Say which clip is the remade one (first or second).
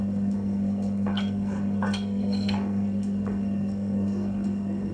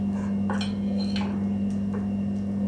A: first